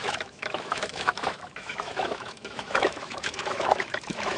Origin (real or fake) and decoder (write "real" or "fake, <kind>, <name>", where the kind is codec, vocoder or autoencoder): fake, autoencoder, DAC-VAE